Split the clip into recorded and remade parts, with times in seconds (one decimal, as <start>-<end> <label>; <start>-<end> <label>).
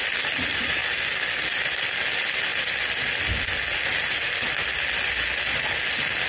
0.0-0.8 remade; 0.8-1.4 recorded; 1.4-2.5 remade; 2.5-6.3 recorded